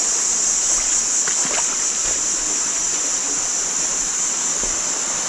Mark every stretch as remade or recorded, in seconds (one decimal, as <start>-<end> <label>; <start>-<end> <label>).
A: 0.0-5.3 recorded